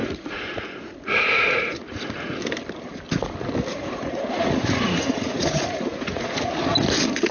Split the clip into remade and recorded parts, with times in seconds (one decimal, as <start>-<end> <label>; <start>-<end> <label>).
0.0-2.4 remade; 2.4-3.7 recorded; 3.7-6.5 remade; 6.5-7.3 recorded